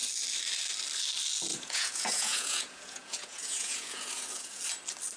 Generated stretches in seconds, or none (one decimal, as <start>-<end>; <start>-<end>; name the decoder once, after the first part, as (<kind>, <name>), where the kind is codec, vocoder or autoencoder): 1.5-4.6 (vocoder, Vocos)